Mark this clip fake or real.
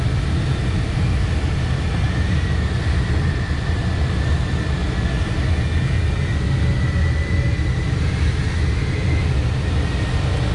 real